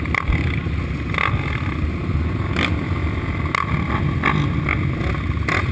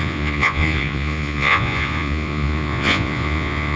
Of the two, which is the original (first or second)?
first